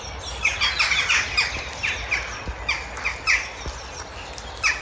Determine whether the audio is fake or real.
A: real